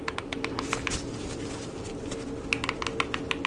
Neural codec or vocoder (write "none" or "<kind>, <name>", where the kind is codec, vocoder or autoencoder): none